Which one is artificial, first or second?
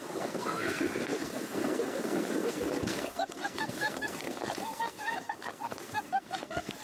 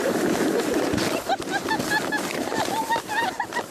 first